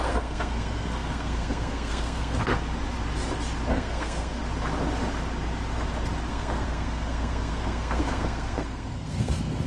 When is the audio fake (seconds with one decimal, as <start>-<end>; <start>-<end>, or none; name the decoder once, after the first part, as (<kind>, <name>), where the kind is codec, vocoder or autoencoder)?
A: 0.0-2.5 (codec, SNAC); 3.7-4.4; 6.3-9.7